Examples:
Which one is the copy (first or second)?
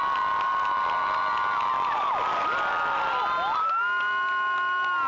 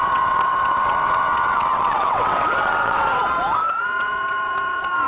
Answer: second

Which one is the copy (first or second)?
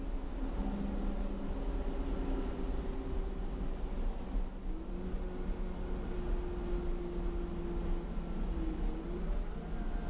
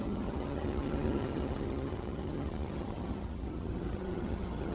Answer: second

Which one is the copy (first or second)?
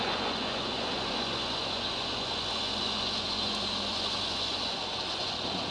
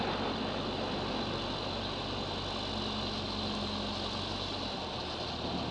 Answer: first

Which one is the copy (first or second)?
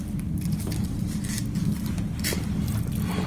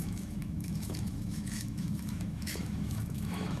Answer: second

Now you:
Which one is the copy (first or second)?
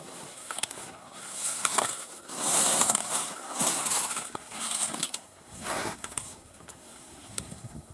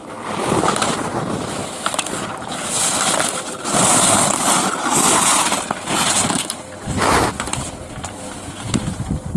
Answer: first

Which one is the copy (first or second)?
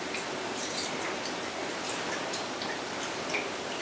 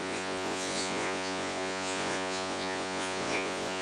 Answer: second